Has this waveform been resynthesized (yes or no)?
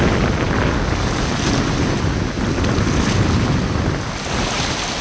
no